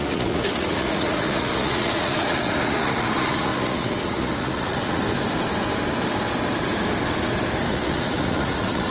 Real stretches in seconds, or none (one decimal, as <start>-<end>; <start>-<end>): 5.0-7.7